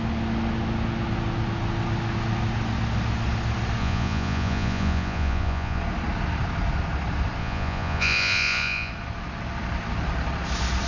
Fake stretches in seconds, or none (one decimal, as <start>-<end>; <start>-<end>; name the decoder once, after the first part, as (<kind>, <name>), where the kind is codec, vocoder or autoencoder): 3.8-5.8 (vocoder, Vocos); 7.4-8.9